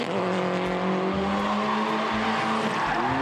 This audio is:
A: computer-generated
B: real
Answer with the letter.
B